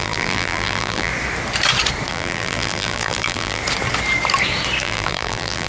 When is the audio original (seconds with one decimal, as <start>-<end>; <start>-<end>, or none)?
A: 1.1-2.1; 3.6-4.8